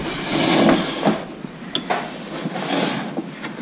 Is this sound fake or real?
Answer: real